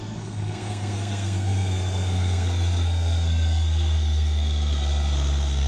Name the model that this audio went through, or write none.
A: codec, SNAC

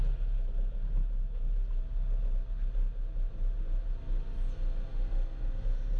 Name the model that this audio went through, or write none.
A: none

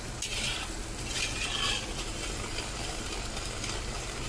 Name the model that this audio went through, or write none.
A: none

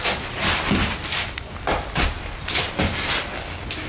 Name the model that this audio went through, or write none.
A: none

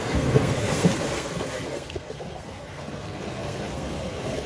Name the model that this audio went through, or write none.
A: codec, SNAC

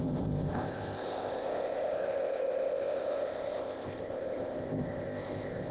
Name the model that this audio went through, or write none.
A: codec, ZipCodec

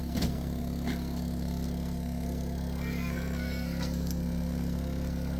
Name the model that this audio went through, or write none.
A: codec, SNAC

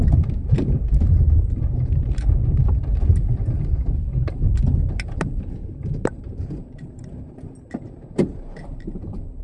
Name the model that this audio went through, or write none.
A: vocoder, BigVGAN v2